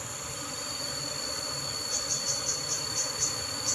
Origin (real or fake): real